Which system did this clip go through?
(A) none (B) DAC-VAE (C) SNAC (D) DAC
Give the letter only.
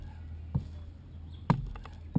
A